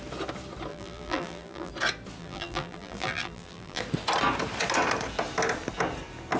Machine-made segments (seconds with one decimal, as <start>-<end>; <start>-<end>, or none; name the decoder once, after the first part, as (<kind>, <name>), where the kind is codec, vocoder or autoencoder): 0.7-1.7 (vocoder, BigVGAN v2); 2.2-3.8